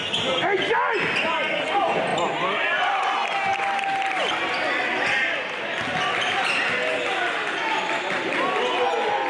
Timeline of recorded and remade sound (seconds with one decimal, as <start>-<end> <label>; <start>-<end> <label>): 0.0-9.3 recorded

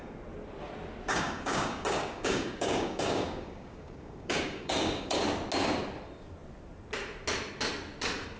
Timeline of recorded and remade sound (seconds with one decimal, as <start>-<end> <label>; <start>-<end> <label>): 0.0-1.1 recorded; 1.1-5.2 remade; 5.2-8.4 recorded